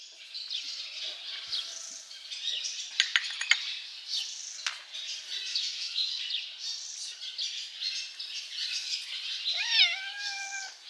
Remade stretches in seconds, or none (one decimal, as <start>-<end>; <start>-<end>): 5.5-6.2